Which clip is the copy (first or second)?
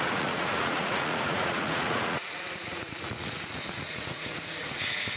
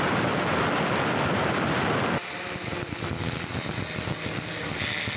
first